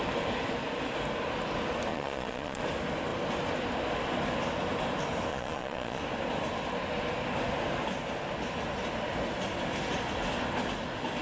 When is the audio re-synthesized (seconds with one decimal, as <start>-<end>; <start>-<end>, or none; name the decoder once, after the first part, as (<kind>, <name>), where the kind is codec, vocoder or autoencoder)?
1.9-2.6 (vocoder, Vocos); 5.3-6.0